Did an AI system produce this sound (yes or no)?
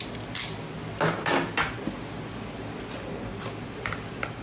no